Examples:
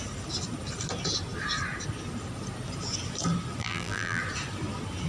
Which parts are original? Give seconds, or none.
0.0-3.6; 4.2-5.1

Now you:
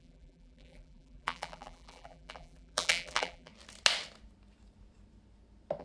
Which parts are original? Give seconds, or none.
3.5-5.8

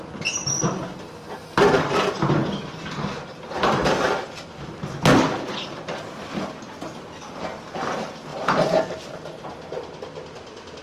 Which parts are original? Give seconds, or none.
0.0-0.4; 1.1-2.4; 4.8-10.8